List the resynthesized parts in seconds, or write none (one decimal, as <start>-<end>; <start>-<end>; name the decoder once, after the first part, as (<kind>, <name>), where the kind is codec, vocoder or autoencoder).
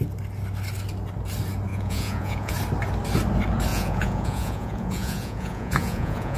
1.7-2.5 (vocoder, Vocos); 3.7-6.4